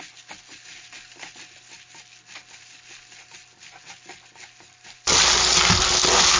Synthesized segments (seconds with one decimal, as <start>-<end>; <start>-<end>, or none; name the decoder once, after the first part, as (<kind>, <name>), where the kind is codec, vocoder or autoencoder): none